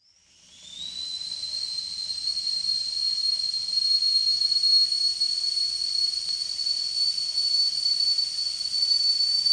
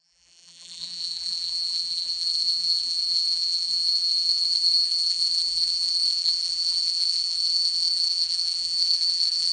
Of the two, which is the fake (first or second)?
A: second